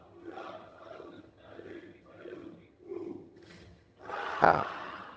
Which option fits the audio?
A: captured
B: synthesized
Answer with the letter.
B